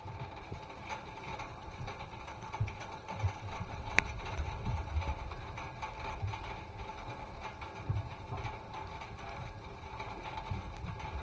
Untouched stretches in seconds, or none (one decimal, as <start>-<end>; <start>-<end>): 0.0-1.3; 4.9-11.2